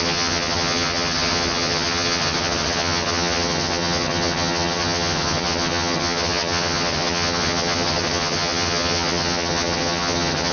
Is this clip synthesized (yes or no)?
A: yes